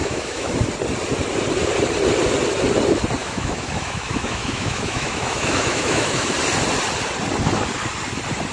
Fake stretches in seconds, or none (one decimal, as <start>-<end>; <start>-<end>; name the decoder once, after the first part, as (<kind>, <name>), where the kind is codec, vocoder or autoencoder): 0.0-0.5 (autoencoder, DAC-VAE); 3.2-6.3